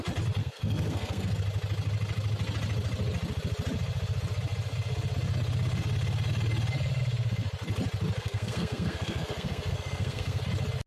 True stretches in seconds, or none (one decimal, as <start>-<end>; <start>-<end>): 0.0-0.4; 1.4-8.2; 10.4-10.9